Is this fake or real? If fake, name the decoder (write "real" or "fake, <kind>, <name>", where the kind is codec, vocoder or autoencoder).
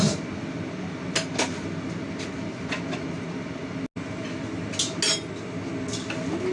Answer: real